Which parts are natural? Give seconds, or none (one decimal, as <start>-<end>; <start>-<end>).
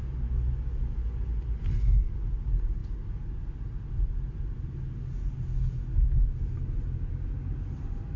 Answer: 0.0-8.2